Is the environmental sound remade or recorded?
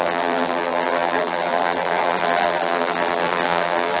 remade